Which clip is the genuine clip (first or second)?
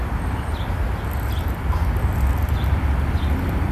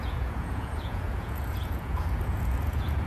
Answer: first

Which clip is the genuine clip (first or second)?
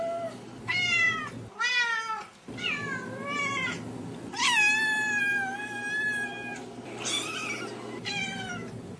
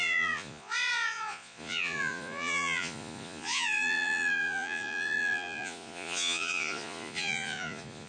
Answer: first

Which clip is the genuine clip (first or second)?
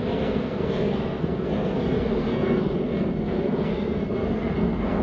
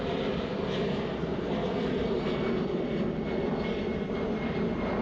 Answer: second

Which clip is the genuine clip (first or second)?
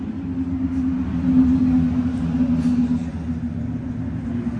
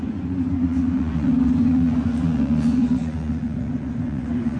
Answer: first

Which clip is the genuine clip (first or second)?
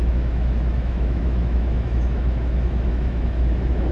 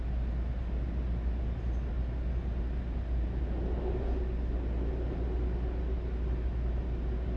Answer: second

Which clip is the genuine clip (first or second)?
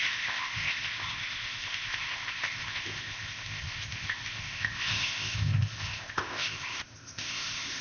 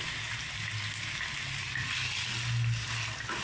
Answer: second